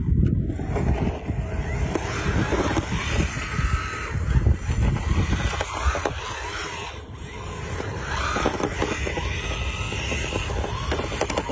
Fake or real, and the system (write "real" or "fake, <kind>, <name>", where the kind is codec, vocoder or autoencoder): real